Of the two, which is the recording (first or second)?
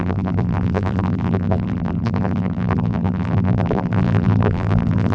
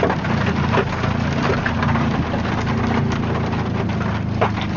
second